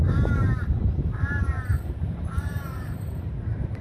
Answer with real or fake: fake